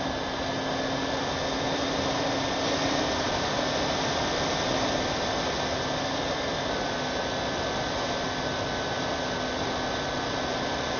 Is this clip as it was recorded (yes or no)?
yes